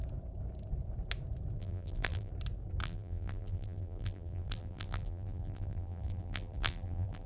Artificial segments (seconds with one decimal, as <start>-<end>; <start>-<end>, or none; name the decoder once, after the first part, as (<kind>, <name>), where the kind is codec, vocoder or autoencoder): 1.6-2.3 (vocoder, BigVGAN v2); 2.8-7.3